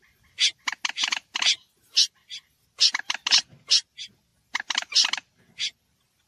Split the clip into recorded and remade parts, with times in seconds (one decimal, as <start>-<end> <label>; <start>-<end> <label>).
0.0-6.3 recorded